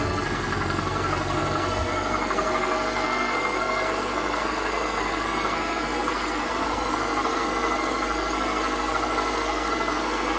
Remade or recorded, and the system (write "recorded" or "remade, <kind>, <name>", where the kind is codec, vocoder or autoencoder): remade, codec, SNAC